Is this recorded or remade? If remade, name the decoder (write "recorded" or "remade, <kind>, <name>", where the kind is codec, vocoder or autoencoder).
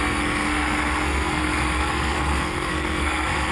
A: remade, codec, SNAC